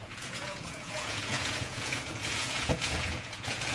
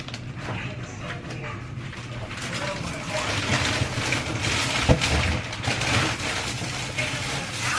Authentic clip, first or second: second